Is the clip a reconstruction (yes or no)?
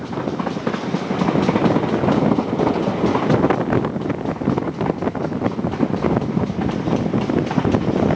no